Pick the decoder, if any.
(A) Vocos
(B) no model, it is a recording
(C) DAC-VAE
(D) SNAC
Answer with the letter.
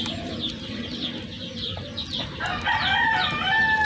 B